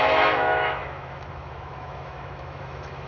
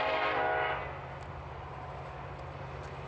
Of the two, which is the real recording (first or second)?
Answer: second